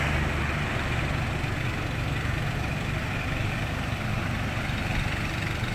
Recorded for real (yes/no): yes